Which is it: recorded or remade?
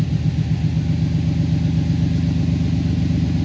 recorded